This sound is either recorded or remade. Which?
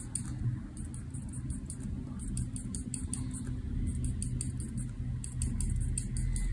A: recorded